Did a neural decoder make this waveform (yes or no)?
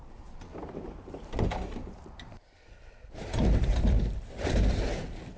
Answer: yes